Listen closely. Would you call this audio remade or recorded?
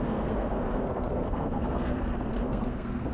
remade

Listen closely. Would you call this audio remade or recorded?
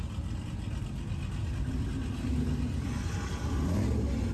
recorded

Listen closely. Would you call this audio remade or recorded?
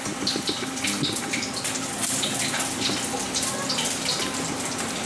recorded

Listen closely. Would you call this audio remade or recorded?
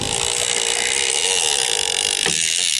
recorded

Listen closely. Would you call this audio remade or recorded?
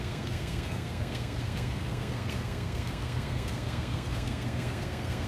remade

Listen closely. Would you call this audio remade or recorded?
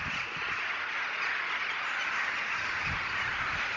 recorded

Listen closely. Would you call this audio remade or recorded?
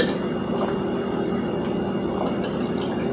recorded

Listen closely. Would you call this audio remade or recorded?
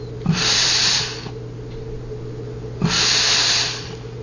recorded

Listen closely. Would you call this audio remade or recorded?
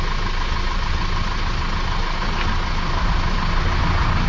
recorded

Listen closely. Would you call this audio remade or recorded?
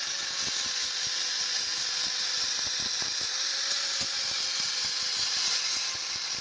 recorded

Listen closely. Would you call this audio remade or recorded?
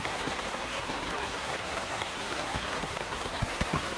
remade